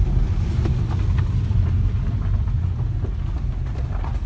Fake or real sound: real